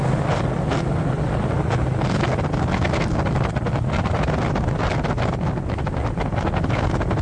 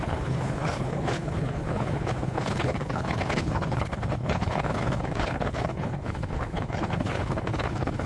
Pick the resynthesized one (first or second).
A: second